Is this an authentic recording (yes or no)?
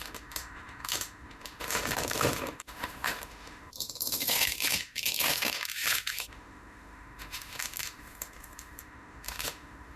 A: no